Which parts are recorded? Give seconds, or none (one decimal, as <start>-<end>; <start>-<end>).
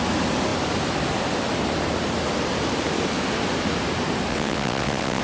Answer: 0.0-4.3